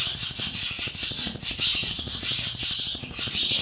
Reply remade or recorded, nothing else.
recorded